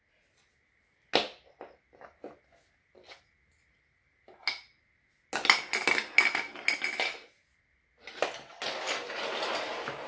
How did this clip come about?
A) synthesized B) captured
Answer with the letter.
B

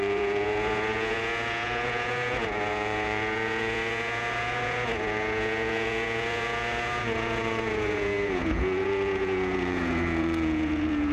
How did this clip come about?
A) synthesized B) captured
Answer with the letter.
A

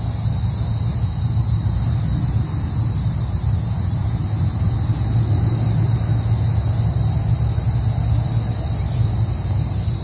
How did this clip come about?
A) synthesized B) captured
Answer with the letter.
B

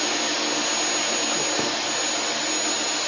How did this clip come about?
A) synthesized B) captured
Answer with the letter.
B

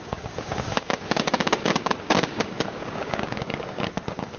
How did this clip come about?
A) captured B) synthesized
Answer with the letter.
B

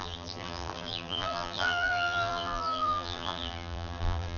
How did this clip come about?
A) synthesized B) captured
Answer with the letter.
A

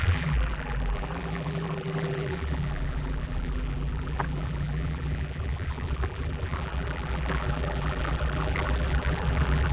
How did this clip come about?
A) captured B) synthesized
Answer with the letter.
B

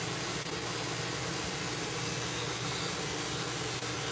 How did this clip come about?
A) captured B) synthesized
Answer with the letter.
A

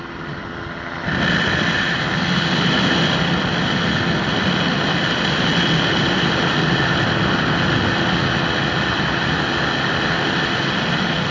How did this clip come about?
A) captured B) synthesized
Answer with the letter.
A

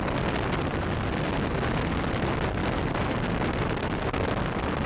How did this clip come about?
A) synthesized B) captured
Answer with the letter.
B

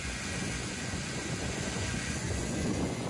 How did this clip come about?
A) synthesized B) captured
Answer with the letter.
A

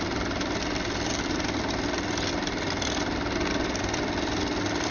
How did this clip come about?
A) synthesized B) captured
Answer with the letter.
A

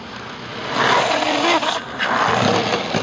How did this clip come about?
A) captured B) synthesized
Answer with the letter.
A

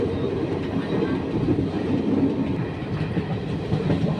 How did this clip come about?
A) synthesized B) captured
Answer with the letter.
B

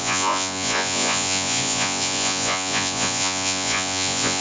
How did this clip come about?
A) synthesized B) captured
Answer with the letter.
A